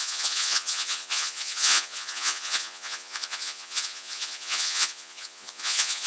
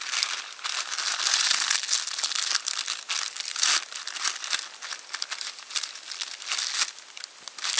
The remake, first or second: first